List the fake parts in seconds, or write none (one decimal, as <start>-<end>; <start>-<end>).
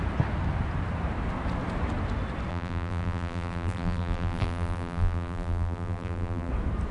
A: 2.5-6.5